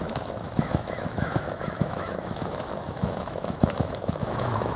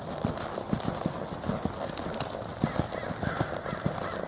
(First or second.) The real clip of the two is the second